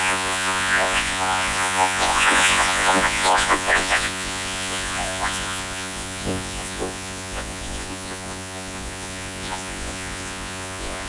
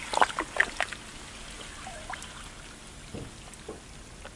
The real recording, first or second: second